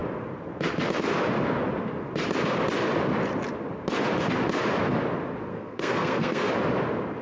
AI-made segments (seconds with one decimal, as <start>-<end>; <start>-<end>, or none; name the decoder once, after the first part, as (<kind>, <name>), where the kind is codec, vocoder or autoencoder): 5.5-6.5 (codec, SNAC)